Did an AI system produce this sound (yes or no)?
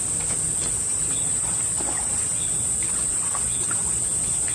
no